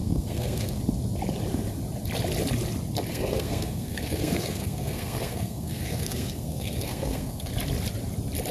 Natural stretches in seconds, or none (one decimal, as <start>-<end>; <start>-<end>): 0.8-3.1; 7.5-8.5